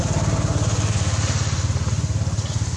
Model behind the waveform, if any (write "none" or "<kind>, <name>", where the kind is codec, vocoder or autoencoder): none